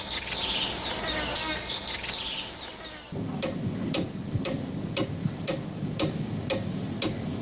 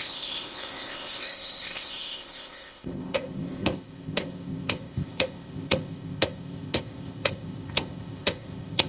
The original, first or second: first